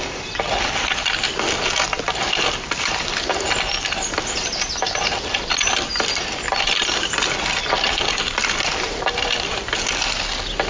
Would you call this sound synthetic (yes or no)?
no